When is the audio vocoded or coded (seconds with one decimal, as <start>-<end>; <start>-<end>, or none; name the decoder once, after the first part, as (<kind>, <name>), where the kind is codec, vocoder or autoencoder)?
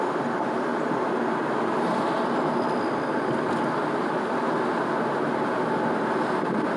0.7-1.3 (vocoder, BigVGAN v2)